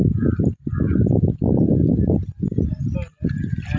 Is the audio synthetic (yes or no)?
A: no